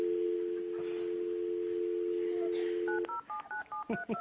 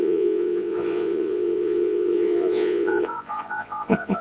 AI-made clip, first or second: second